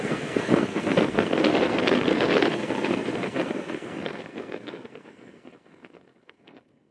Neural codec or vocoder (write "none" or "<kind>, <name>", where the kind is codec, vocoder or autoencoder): codec, SNAC